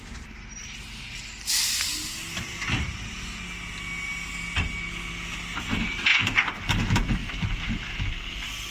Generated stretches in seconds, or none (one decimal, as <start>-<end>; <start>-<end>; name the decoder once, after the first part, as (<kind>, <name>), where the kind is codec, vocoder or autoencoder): none